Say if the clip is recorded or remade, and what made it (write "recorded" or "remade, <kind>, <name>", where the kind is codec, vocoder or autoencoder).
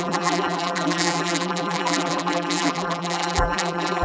remade, vocoder, BigVGAN v2